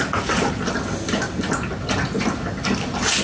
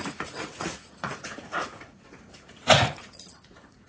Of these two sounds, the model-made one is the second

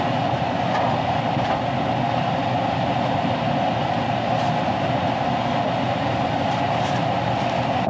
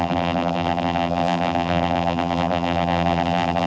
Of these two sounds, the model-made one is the second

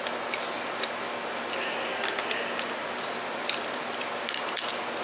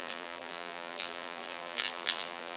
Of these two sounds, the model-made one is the second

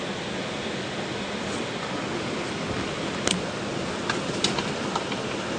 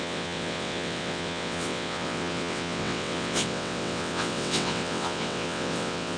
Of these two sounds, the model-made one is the second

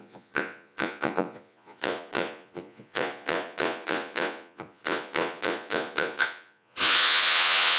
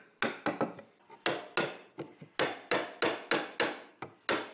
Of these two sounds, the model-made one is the first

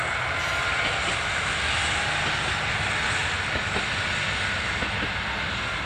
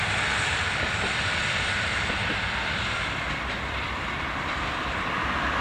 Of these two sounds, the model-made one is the second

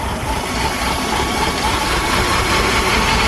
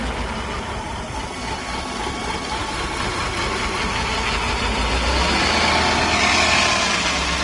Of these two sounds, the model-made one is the first